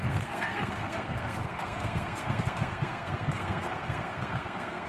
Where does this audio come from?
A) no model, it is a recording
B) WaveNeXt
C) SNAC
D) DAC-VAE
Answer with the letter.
C